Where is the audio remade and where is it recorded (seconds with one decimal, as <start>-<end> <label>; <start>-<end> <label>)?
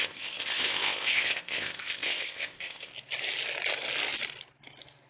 0.0-2.9 remade; 2.9-5.1 recorded